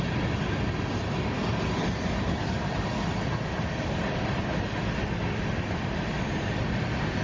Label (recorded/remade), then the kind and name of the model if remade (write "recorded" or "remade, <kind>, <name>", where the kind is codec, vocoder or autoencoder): recorded